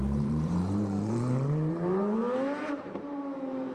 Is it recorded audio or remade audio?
remade